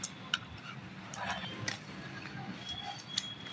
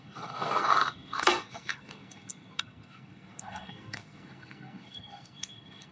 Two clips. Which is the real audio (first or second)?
first